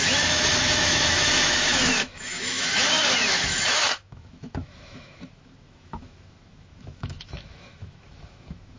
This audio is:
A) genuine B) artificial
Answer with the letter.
B